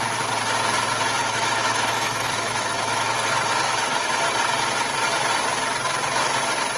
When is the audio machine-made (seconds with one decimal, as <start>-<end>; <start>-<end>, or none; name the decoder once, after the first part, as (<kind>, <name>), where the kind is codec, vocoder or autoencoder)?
1.2-4.3 (autoencoder, DAC-VAE)